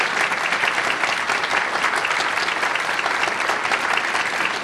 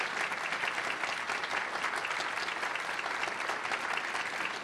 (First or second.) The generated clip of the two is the first